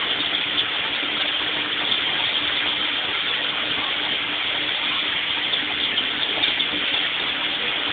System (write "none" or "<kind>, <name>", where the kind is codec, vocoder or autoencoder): none